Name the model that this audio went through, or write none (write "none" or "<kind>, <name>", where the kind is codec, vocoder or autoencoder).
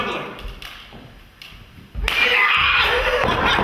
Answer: none